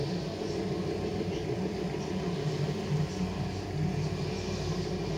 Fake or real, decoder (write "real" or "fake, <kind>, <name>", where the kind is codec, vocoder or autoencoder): real